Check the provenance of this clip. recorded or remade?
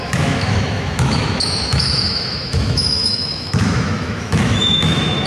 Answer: remade